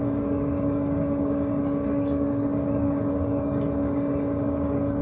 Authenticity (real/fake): fake